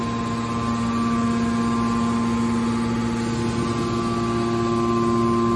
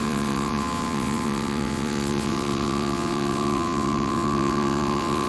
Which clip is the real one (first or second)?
first